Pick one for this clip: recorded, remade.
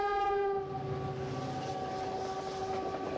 recorded